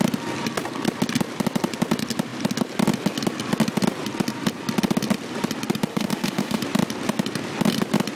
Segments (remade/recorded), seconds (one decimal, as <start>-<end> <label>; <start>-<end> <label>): 0.0-5.9 recorded; 5.9-6.6 remade; 6.6-8.2 recorded